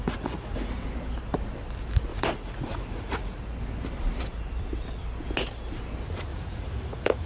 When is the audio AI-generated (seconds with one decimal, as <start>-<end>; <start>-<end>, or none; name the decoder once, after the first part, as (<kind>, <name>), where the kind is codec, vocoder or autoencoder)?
0.0-0.7 (vocoder, Vocos); 2.1-3.4; 6.3-7.3